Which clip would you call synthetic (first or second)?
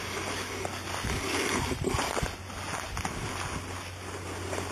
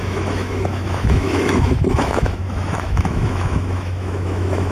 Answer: second